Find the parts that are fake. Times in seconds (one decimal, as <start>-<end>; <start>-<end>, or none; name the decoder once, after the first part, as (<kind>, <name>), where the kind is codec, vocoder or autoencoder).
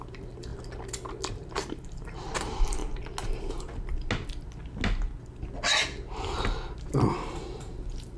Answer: 0.0-0.5 (vocoder, BigVGAN v2); 1.3-2.8; 6.9-8.2